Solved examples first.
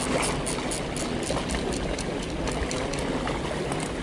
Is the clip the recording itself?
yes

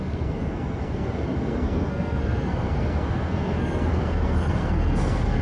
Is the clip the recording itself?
no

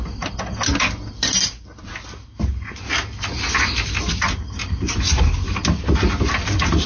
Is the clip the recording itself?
yes